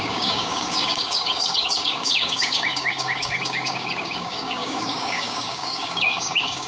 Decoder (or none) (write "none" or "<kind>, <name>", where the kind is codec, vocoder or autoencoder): codec, DAC